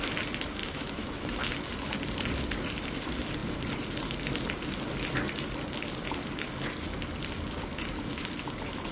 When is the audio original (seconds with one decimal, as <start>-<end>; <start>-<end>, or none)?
0.0-0.6; 1.5-8.9